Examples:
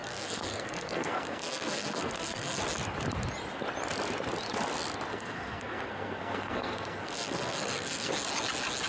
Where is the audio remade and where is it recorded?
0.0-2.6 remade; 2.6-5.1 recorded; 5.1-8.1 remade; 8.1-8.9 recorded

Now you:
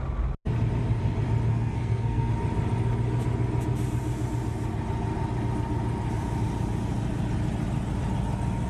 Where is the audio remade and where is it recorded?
0.0-1.5 recorded; 1.5-2.3 remade; 2.3-8.7 recorded

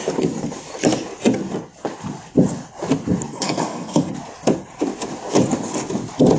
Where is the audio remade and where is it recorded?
0.0-3.3 recorded; 3.3-4.1 remade; 4.1-6.4 recorded